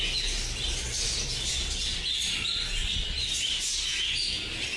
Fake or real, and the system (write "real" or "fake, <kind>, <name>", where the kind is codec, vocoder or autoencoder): real